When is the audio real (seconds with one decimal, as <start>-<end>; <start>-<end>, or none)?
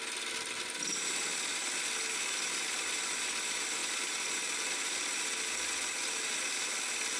0.0-7.2